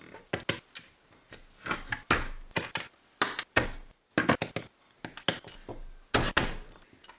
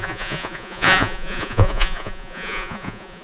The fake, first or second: second